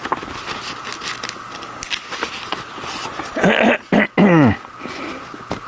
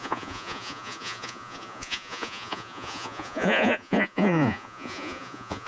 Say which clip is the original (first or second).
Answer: first